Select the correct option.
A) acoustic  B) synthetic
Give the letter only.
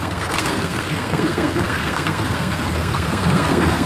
B